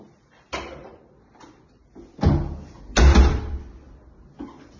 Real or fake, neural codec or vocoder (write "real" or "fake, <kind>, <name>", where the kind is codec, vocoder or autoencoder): real